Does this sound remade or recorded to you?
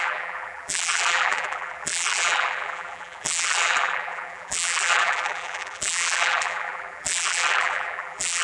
remade